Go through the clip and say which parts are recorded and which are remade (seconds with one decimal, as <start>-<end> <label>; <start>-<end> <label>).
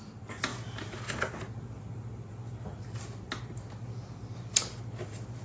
0.0-5.4 recorded